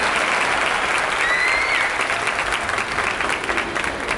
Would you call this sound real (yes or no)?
yes